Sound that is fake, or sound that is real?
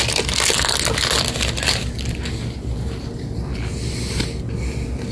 real